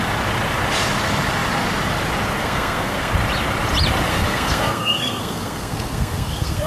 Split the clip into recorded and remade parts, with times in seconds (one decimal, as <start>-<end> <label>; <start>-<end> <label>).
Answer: 0.0-2.4 recorded; 2.4-3.1 remade; 3.1-4.1 recorded; 4.1-6.7 remade